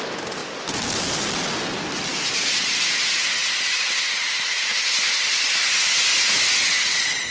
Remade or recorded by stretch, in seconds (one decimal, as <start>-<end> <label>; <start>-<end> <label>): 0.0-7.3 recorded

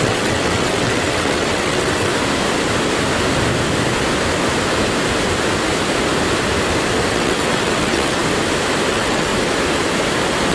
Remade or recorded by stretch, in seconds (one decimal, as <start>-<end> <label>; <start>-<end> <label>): 0.0-2.1 remade; 2.1-7.1 recorded; 7.1-8.2 remade; 8.2-8.9 recorded; 8.9-9.3 remade; 9.3-10.5 recorded

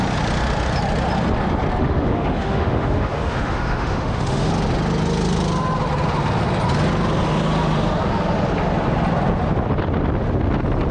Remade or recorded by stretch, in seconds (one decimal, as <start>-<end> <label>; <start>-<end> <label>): 0.0-1.8 recorded; 1.8-4.5 remade; 4.5-10.9 recorded

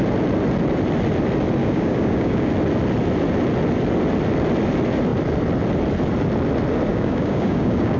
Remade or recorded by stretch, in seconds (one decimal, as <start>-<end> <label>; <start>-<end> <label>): 0.0-1.6 recorded; 1.6-2.5 remade; 2.5-6.9 recorded; 6.9-8.0 remade

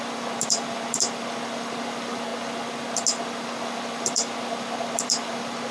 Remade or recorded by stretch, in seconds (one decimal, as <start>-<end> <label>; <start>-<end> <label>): 0.0-2.3 remade; 2.3-3.2 recorded; 3.2-5.7 remade

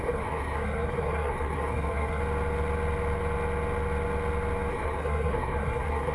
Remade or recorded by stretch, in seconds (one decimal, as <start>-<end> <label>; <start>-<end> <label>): 0.0-2.2 remade; 2.2-4.7 recorded; 4.7-6.1 remade